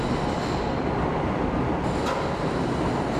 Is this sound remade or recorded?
recorded